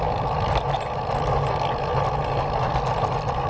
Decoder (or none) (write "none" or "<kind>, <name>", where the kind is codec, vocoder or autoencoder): none